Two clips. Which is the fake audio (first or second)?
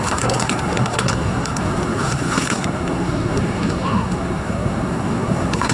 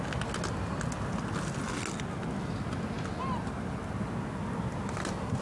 first